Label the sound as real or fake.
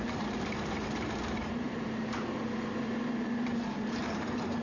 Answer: fake